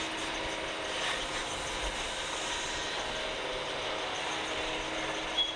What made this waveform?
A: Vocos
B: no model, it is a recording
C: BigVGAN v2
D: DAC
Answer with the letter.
B